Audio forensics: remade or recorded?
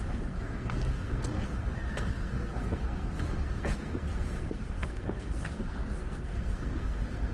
remade